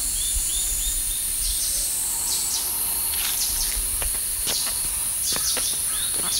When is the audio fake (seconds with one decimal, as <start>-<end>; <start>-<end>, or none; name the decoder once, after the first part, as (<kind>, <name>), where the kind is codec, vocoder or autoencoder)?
0.0-5.0 (vocoder, BigVGAN v2)